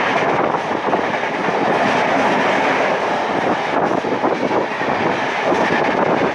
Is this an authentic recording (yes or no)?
yes